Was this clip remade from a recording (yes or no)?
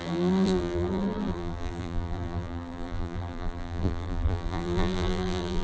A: yes